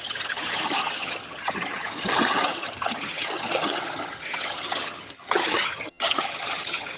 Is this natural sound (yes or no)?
no